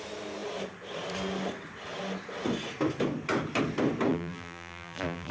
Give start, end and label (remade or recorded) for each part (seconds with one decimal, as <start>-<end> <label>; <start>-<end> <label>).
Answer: 0.0-4.1 recorded; 4.1-5.3 remade